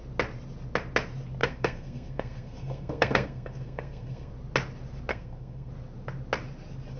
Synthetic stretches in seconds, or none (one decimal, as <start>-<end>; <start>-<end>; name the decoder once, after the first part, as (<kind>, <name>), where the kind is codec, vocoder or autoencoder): 1.4-4.3 (codec, SNAC); 5.1-5.7